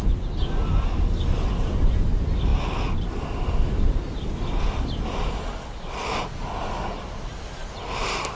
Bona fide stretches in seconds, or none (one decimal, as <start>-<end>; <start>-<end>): 0.0-8.4